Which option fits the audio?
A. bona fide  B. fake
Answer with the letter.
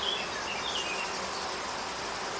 A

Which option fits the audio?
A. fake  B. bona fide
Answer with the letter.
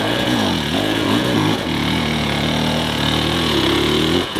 A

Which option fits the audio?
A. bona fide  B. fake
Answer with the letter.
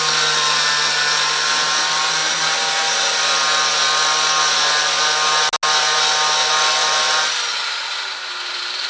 A